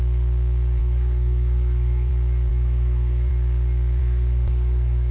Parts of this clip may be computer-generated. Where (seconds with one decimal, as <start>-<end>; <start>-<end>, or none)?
0.8-2.1; 2.5-3.3; 4.0-5.1